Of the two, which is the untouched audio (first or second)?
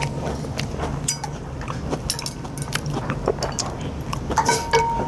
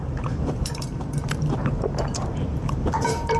first